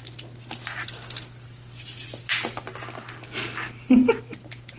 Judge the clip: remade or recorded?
recorded